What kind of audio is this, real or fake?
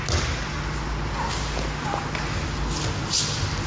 real